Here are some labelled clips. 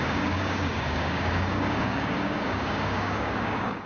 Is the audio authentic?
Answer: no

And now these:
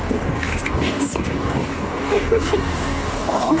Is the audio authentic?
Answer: no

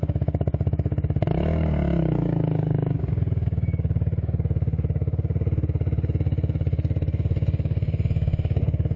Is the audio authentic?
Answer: no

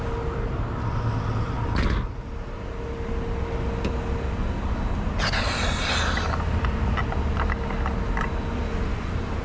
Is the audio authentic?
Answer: yes